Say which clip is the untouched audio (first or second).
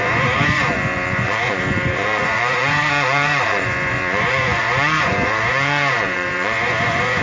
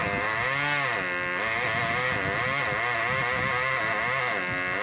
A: second